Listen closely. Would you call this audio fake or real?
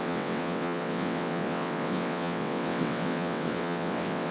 fake